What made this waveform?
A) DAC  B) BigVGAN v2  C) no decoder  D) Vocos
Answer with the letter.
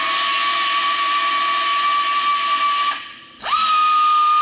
C